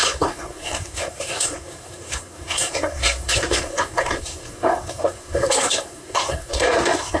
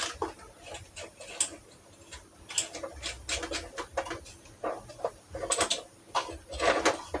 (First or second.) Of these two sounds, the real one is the second